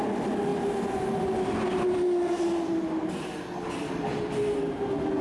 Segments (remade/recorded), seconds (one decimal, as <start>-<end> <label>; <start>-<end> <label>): 0.0-5.2 recorded